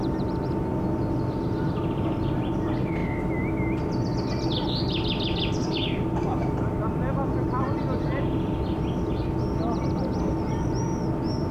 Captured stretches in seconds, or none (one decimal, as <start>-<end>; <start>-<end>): 0.0-11.5

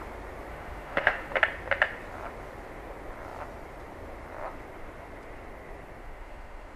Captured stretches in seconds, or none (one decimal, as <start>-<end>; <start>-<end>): 0.0-0.5; 1.4-6.0

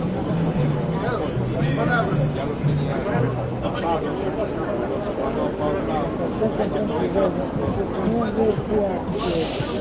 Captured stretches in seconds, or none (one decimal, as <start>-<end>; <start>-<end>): 0.0-9.8

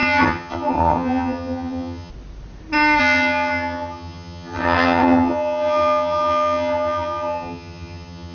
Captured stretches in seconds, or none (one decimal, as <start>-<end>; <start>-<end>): 2.1-3.0

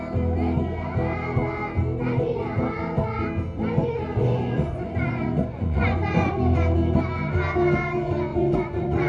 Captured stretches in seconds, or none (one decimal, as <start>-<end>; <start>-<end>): 0.0-4.2; 6.3-8.3

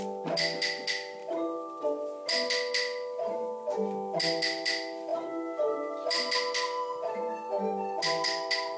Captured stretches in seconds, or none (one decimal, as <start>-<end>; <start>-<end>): 0.0-8.8

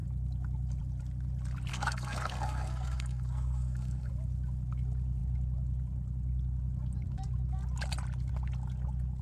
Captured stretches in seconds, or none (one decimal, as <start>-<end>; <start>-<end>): 0.0-1.7; 4.1-9.2